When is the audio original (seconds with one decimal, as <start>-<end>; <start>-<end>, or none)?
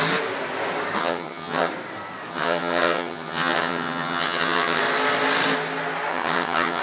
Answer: 0.0-1.0; 1.7-2.3; 4.8-6.1